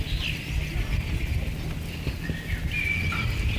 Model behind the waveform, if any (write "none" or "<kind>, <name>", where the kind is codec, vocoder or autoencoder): none